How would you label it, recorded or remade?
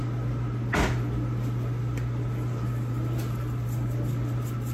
recorded